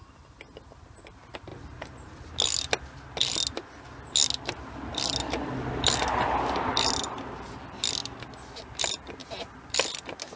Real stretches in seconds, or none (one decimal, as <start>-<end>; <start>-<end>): 0.0-10.4